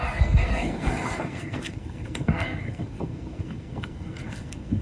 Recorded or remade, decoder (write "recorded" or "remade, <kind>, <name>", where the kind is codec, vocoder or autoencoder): remade, codec, SNAC